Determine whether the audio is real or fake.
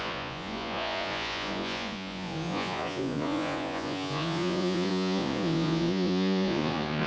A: fake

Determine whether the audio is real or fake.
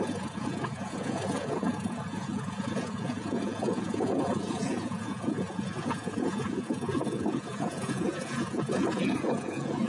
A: fake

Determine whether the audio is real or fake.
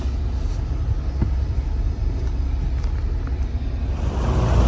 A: real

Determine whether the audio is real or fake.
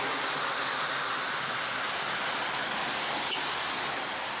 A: real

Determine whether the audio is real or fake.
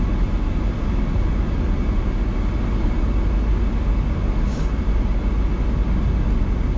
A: real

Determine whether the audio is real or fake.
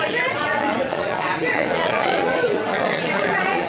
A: fake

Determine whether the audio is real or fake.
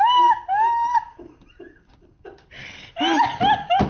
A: real